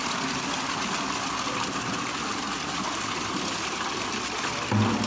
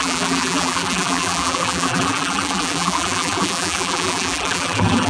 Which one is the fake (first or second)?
second